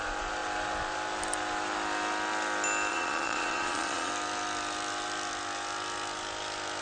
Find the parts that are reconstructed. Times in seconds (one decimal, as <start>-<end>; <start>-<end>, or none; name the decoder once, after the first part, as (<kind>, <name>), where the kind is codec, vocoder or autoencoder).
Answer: 2.9-4.1 (vocoder, Vocos)